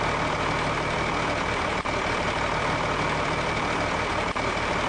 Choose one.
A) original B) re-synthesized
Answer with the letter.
B